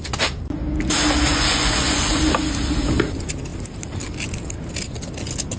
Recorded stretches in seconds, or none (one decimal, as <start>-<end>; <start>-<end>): 0.0-1.3; 2.2-5.6

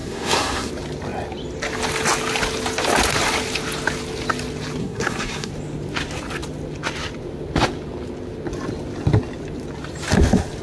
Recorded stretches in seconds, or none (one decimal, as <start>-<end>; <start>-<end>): 0.7-4.8; 5.5-10.6

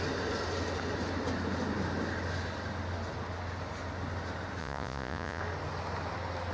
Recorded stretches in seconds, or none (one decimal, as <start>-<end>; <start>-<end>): 0.0-4.6; 5.4-6.5

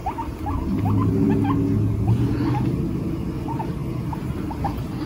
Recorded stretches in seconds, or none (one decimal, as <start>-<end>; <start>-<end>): 0.0-5.1

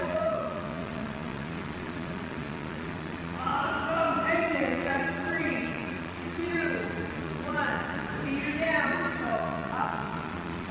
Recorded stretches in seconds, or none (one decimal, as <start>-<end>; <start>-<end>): 3.5-4.4; 8.1-8.8

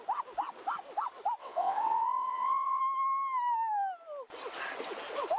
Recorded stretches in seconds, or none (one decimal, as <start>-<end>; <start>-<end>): 0.0-1.4; 2.8-5.4